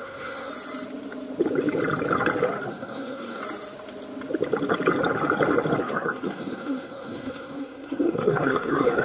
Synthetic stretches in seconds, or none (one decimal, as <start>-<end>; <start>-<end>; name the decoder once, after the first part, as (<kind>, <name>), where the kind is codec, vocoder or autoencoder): 0.0-0.5 (codec, SNAC); 2.7-3.4; 5.8-9.0